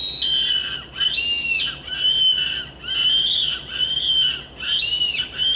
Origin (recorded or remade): recorded